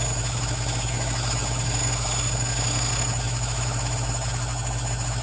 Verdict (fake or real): fake